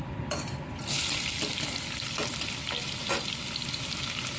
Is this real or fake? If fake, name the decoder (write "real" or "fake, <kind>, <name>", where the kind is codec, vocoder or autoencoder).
real